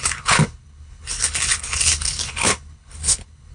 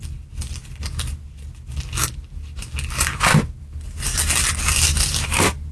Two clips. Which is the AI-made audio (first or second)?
first